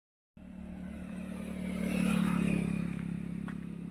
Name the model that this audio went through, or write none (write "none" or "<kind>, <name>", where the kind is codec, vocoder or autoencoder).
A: none